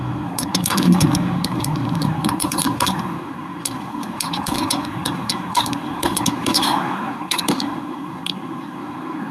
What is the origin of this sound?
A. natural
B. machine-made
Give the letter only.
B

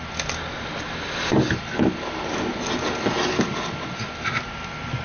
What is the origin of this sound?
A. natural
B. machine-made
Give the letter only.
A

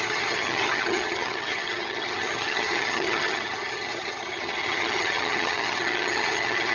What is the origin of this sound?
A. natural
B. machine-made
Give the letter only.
B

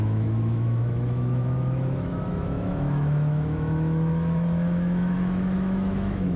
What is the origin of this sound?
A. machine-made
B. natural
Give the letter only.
A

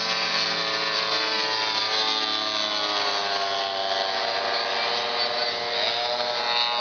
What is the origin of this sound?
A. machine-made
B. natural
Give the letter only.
B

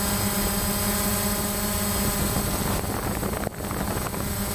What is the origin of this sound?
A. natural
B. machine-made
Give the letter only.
A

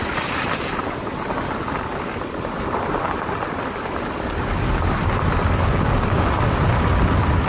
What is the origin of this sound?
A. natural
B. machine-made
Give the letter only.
B